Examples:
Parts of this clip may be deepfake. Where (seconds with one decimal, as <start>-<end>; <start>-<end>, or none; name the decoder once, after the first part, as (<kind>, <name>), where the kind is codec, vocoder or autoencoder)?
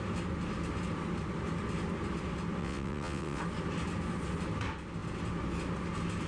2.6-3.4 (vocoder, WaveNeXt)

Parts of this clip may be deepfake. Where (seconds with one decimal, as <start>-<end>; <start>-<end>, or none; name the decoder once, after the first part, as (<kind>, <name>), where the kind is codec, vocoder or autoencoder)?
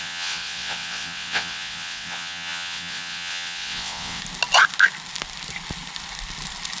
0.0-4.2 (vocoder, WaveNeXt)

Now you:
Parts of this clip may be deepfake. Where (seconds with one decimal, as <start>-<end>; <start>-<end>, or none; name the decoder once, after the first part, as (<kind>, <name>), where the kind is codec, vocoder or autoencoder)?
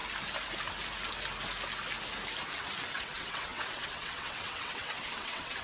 2.9-5.6 (vocoder, WaveNeXt)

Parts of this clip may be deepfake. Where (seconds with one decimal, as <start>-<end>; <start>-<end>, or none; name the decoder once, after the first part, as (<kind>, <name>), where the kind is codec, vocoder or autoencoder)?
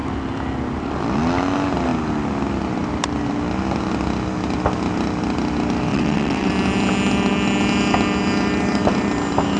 5.9-6.5 (vocoder, WaveNeXt)